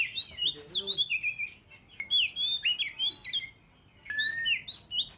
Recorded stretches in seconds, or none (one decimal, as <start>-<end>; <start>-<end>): 0.0-5.2

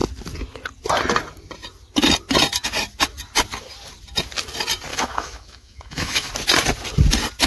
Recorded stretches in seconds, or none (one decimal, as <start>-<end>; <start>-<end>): 0.0-4.9; 6.3-7.5

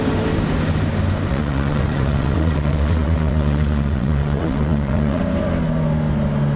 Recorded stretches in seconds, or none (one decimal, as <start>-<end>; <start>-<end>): 0.0-1.3; 5.2-6.6